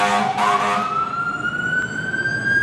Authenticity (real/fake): real